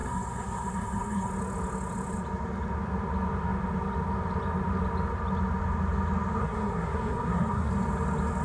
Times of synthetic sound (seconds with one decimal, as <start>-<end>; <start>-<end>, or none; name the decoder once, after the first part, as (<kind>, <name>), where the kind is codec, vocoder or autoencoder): 0.0-1.3 (codec, SNAC); 6.4-7.7

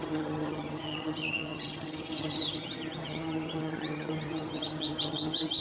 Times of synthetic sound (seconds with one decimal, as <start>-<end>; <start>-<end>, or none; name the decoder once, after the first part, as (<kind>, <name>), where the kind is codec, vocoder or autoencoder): 0.0-5.6 (vocoder, HiFi-GAN)